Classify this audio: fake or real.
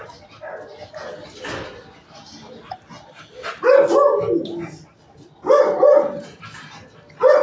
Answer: real